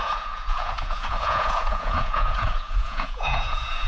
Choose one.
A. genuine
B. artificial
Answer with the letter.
B